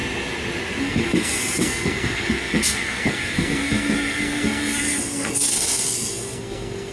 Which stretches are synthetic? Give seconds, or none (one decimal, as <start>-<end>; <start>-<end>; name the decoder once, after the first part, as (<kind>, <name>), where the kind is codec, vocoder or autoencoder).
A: 0.8-6.9 (codec, SNAC)